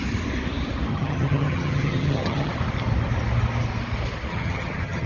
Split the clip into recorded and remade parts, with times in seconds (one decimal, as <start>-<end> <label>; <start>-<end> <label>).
0.0-0.9 recorded; 0.9-2.5 remade; 2.5-4.3 recorded; 4.3-5.1 remade